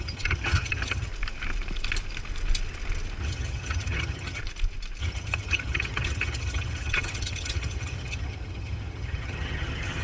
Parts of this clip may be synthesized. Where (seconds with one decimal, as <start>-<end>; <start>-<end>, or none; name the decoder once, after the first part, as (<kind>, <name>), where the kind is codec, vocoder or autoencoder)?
0.0-1.1 (vocoder, HiFi-GAN); 3.2-4.4; 5.0-10.0